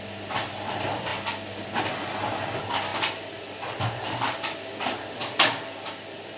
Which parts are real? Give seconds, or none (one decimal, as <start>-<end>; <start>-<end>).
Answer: 0.0-6.4